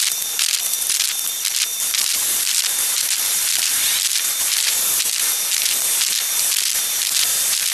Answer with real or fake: fake